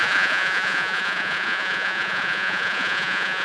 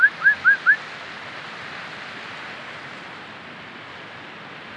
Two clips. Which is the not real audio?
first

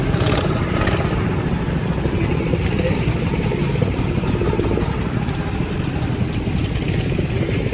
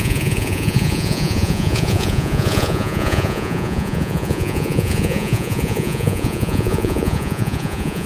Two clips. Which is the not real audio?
second